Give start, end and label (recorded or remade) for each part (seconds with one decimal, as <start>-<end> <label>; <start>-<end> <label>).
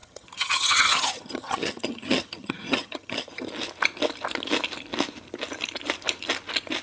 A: 0.0-3.5 remade; 3.5-6.8 recorded